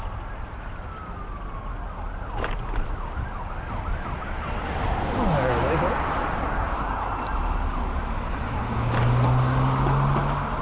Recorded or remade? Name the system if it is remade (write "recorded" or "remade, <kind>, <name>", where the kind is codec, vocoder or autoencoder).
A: recorded